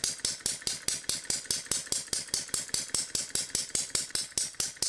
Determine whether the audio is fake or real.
real